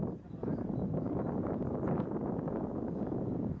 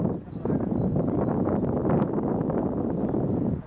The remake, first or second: first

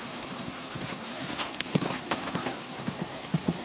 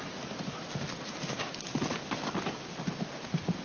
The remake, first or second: first